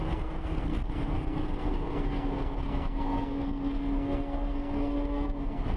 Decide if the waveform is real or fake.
fake